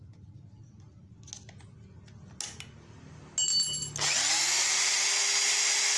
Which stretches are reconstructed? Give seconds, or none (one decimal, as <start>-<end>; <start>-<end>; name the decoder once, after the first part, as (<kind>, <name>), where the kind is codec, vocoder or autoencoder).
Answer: none